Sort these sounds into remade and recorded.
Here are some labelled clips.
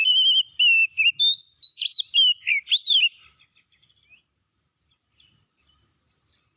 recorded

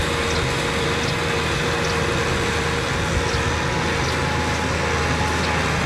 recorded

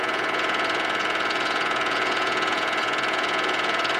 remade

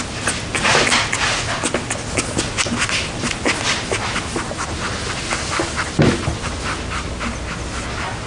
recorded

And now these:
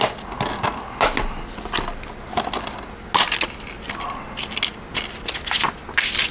recorded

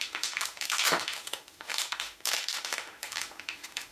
remade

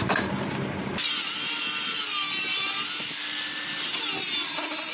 recorded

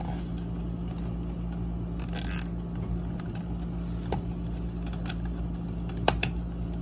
recorded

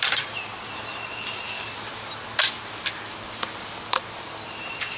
recorded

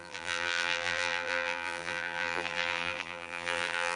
remade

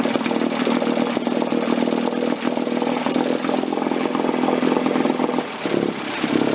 recorded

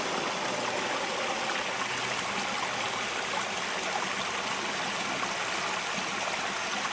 recorded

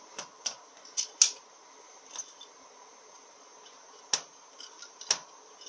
recorded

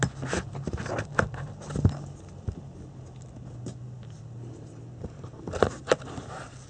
recorded